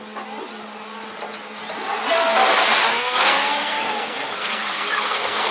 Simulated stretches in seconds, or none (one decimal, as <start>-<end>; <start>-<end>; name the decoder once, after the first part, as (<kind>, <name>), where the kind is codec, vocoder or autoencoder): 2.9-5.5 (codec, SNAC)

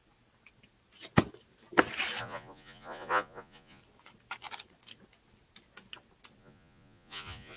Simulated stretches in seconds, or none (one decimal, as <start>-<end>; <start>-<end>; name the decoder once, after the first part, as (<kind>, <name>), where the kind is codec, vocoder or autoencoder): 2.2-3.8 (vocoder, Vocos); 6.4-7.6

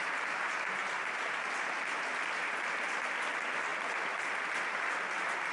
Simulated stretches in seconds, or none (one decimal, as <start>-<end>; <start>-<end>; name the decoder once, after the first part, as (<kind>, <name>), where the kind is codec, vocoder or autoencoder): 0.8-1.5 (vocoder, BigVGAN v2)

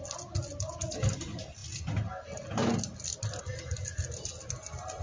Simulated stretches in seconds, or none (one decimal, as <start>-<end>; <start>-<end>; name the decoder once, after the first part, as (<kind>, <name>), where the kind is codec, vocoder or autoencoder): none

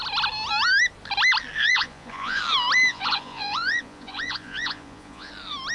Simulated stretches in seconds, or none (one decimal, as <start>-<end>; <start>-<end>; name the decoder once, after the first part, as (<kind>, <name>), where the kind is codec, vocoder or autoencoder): 1.6-2.4 (vocoder, Vocos); 2.9-5.3